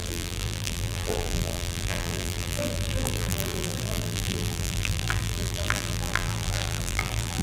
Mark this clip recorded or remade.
remade